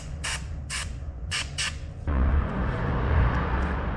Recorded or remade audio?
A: remade